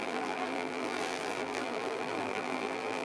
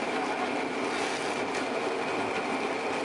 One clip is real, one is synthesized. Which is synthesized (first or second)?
first